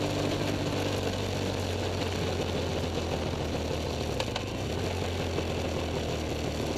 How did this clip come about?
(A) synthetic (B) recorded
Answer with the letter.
B